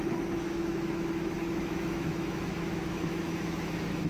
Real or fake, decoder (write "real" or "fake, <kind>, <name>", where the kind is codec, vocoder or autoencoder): fake, autoencoder, DAC-VAE